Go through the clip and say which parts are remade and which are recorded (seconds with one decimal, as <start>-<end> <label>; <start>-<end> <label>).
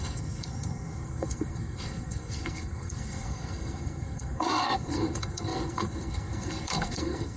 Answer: 0.0-7.4 remade